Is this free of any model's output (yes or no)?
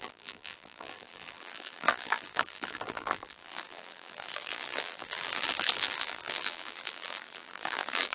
no